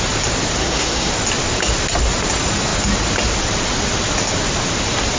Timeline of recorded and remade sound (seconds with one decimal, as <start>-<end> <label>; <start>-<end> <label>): 0.0-0.6 recorded; 0.6-1.1 remade; 1.1-5.2 recorded